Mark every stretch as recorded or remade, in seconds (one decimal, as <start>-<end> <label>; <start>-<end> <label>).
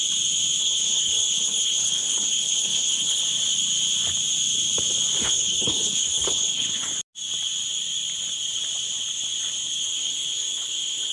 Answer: 0.0-0.6 recorded; 0.6-3.2 remade; 3.2-5.2 recorded; 5.2-6.9 remade; 6.9-9.8 recorded; 9.8-11.1 remade